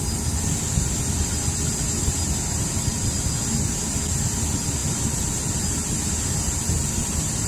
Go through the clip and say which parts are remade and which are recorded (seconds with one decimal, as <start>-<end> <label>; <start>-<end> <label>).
0.0-7.5 recorded